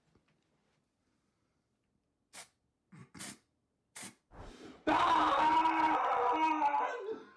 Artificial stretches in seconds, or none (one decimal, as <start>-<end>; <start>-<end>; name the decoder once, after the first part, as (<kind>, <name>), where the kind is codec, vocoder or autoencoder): 3.0-6.5 (vocoder, BigVGAN v2)

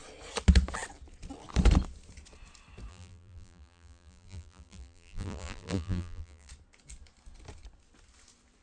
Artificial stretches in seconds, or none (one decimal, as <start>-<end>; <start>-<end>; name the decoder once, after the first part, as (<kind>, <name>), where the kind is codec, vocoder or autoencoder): 2.9-6.5 (vocoder, BigVGAN v2)

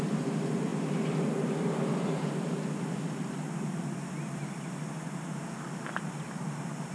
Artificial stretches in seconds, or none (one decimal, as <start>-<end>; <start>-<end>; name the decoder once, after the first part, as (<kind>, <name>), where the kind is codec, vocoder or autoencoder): none

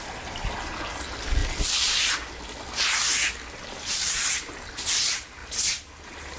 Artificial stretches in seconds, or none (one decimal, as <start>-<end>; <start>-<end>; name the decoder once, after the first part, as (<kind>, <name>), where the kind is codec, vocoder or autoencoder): 1.4-2.0 (vocoder, BigVGAN v2); 3.9-5.0; 5.4-6.4

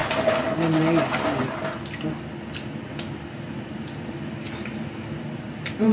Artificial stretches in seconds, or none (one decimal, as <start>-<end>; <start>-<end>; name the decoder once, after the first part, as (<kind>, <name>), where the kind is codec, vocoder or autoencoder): 3.5-5.9 (vocoder, BigVGAN v2)

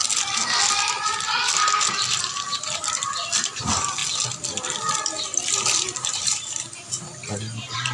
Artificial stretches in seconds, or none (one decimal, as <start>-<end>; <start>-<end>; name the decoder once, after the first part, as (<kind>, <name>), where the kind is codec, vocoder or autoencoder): 2.2-4.0 (vocoder, BigVGAN v2); 4.9-7.9

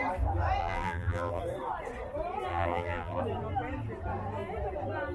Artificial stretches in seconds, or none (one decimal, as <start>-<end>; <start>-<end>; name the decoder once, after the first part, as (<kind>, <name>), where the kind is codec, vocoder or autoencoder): 0.6-1.4 (vocoder, BigVGAN v2); 2.5-3.2

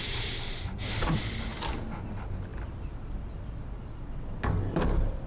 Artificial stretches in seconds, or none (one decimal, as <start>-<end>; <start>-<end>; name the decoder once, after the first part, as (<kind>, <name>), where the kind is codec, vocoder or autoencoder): 0.0-1.2 (vocoder, BigVGAN v2)